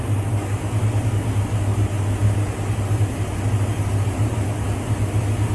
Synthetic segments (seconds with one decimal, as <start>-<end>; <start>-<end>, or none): none